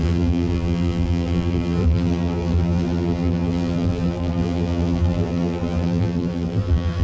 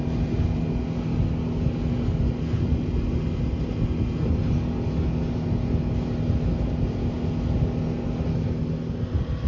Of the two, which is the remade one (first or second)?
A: first